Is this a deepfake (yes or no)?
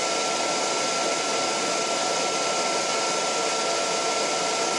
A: no